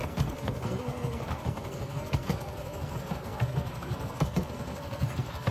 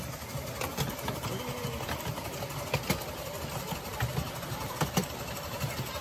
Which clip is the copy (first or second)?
first